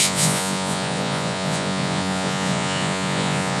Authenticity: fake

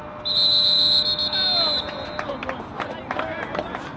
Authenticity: real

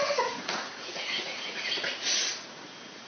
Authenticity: fake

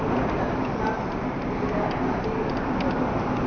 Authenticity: real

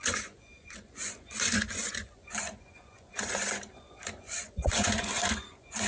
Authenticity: fake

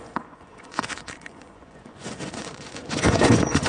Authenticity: fake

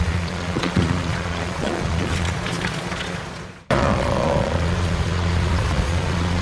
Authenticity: fake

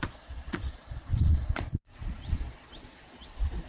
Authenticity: fake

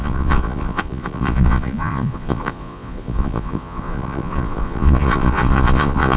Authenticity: fake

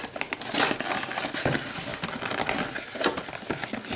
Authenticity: real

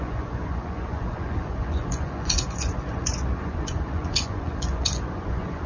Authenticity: fake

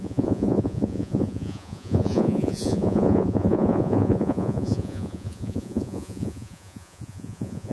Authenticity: fake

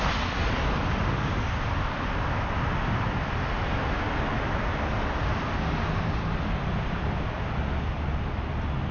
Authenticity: real